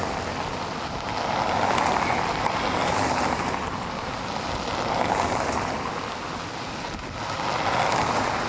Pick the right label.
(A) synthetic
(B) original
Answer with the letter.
B